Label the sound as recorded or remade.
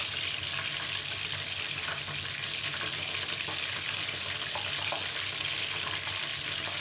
recorded